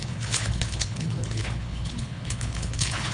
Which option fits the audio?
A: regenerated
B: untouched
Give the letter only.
A